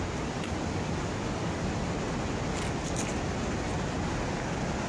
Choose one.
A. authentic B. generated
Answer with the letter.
A